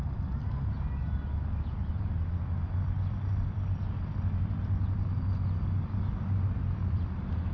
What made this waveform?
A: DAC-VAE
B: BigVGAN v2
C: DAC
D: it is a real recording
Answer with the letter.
D